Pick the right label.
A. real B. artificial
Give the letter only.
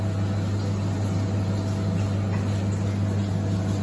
A